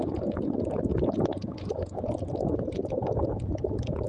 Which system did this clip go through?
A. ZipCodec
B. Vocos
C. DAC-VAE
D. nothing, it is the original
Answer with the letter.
B